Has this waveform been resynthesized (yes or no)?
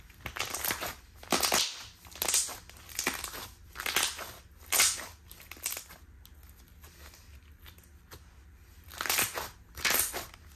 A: no